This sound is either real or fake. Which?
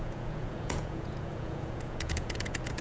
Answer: fake